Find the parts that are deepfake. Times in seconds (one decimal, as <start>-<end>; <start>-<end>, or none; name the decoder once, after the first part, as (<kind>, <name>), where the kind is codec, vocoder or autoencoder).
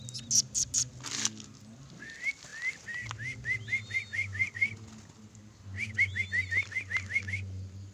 none